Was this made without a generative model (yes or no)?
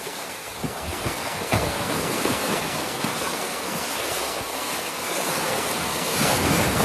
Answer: no